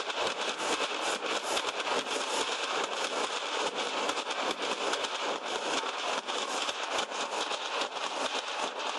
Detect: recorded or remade recorded